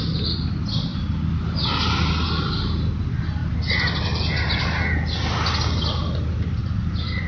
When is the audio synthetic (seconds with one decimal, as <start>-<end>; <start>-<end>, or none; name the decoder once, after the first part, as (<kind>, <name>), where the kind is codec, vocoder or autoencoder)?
3.4-4.6 (vocoder, BigVGAN v2); 6.6-7.3